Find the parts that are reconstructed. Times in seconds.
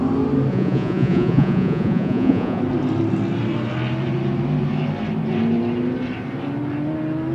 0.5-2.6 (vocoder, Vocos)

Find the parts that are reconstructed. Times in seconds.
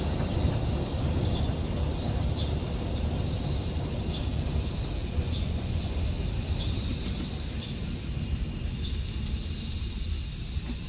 5.0-6.0 (vocoder, Vocos)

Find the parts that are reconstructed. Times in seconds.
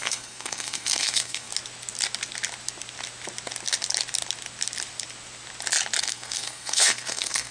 0.0-1.5 (codec, SNAC); 6.0-7.5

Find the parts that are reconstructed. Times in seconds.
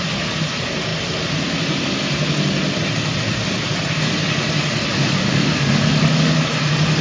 4.9-6.5 (codec, DAC)